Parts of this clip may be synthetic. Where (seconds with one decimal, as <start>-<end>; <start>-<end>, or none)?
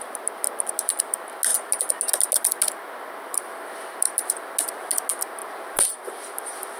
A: none